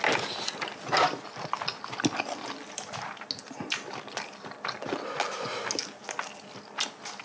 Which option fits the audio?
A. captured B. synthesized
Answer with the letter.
A